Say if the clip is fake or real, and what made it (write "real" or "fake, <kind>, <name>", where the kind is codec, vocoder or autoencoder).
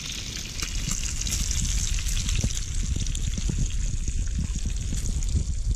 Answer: real